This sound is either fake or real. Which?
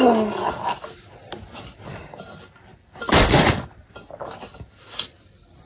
real